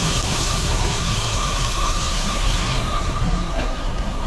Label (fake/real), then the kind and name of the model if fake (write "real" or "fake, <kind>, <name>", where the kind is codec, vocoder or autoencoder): fake, codec, SNAC